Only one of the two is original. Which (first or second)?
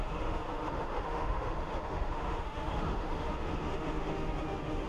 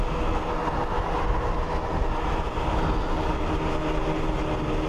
second